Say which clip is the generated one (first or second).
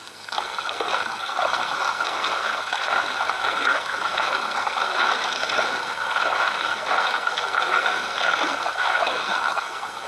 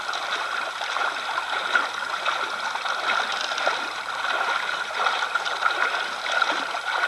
first